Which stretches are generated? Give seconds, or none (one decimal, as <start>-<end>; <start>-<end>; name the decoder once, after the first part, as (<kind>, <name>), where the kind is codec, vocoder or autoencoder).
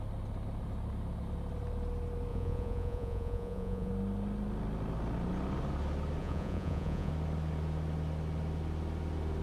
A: 2.3-3.9 (vocoder, Vocos); 6.2-7.1